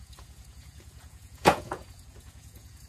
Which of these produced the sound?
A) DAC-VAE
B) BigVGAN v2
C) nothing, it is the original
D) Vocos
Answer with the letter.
D